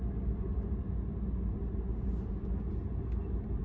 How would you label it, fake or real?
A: real